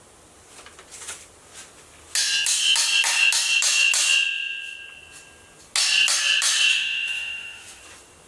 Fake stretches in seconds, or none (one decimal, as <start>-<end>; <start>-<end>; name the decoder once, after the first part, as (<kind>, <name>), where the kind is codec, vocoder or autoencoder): 6.7-7.8 (autoencoder, DAC-VAE)